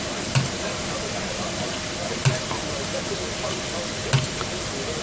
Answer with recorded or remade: recorded